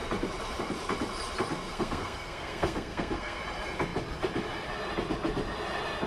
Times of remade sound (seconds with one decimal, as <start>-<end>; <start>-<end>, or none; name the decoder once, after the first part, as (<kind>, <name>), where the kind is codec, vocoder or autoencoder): 1.7-3.4 (codec, SNAC)